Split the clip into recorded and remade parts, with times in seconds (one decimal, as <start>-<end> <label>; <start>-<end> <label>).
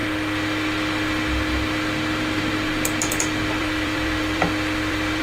0.0-3.1 recorded; 3.1-5.2 remade